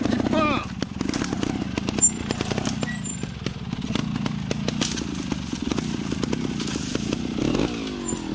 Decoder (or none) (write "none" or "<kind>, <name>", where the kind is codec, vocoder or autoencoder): none